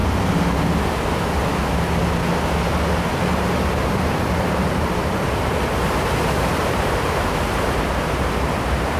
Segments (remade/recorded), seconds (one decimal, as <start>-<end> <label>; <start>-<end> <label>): 0.0-3.1 recorded; 3.1-8.3 remade; 8.3-9.0 recorded